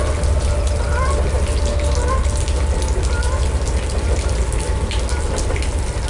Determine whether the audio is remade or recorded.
recorded